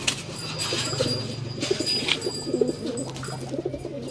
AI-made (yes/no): no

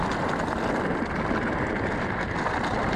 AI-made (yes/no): yes